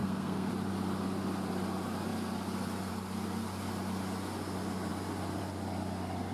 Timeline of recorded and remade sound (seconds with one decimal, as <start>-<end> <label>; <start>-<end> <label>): 0.0-0.5 remade; 0.5-6.3 recorded